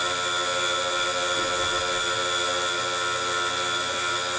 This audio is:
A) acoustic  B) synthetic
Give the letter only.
A